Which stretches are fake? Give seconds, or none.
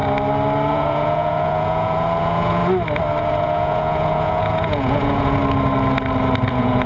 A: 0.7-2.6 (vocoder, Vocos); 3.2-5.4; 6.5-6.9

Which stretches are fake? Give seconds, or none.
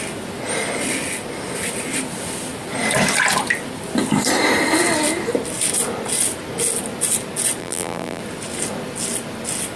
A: 7.6-8.2 (vocoder, BigVGAN v2)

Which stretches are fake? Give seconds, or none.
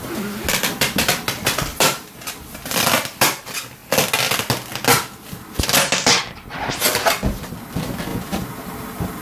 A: 1.7-2.3 (vocoder, BigVGAN v2); 8.1-9.2